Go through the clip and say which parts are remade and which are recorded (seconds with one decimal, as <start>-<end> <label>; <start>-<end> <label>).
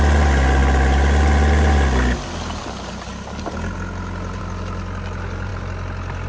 0.0-6.3 recorded